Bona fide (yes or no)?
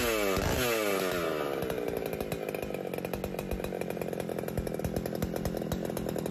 yes